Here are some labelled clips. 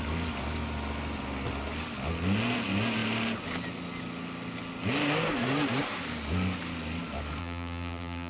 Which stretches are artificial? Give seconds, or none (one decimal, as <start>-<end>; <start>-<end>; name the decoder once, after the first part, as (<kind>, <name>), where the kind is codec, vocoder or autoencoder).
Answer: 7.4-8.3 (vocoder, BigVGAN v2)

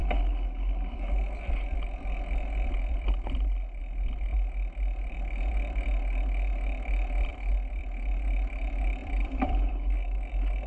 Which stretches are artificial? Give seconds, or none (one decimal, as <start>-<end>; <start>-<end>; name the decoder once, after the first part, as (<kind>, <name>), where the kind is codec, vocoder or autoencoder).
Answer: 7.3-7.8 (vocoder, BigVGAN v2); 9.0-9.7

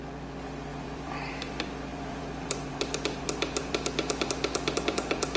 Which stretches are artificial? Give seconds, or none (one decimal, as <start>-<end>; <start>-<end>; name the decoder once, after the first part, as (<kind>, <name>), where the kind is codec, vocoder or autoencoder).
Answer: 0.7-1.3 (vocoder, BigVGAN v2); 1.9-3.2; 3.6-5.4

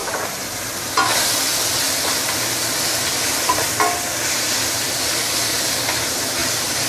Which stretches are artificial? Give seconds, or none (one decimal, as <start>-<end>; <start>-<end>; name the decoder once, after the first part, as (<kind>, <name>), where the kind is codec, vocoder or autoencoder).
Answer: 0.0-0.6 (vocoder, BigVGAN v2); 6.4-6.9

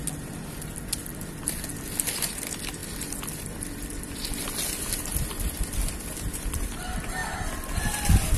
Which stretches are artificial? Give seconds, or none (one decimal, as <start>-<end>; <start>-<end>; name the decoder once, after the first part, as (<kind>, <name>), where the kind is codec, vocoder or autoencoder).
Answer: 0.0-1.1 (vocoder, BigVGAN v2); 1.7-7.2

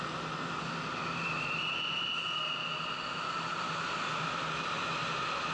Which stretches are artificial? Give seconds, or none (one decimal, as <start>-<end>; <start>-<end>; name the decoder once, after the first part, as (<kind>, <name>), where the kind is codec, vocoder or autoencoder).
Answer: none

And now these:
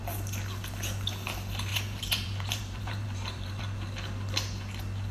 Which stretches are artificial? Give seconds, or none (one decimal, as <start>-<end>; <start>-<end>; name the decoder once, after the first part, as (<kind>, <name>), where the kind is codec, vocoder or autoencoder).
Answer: 1.7-3.6 (vocoder, BigVGAN v2)